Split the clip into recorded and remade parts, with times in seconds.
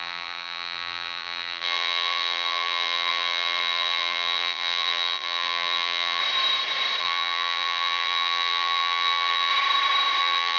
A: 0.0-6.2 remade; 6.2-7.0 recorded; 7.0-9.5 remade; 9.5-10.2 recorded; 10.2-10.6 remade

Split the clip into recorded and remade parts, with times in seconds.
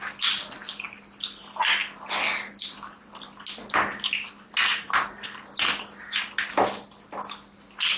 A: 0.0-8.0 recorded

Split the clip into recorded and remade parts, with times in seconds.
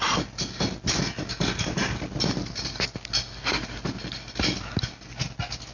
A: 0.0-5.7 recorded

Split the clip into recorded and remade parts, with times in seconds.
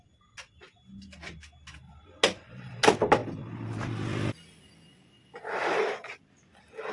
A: 0.0-6.9 recorded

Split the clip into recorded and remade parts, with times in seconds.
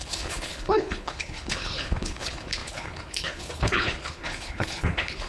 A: 0.0-5.3 remade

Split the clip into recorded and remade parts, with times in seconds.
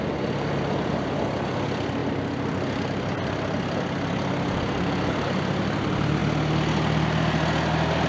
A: 0.0-2.0 remade; 2.0-5.4 recorded; 5.4-6.2 remade; 6.2-8.1 recorded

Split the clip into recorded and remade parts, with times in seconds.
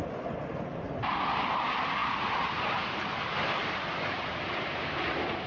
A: 0.0-5.5 recorded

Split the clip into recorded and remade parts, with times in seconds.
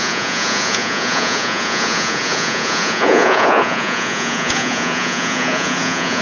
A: 0.0-6.2 remade